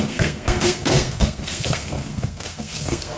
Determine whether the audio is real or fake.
fake